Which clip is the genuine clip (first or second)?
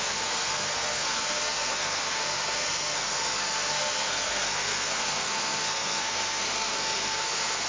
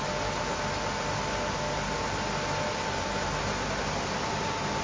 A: second